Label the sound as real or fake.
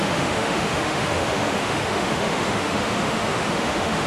fake